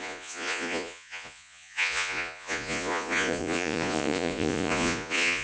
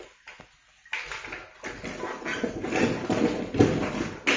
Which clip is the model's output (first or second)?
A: first